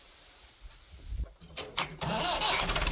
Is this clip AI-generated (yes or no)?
no